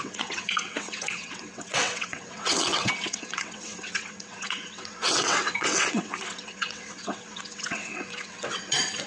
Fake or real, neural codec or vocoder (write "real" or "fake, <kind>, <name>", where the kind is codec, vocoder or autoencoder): fake, vocoder, WaveNeXt